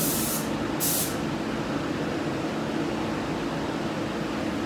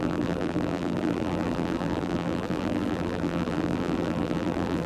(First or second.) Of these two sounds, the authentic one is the first